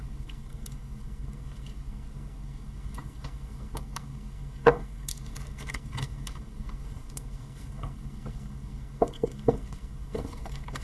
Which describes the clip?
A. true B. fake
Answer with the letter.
B